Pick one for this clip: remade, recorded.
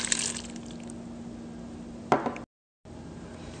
recorded